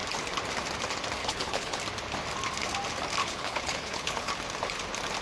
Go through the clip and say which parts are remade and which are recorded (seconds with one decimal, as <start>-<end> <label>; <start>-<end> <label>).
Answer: 0.0-1.2 recorded; 1.2-1.8 remade; 1.8-3.2 recorded; 3.2-4.3 remade; 4.3-5.2 recorded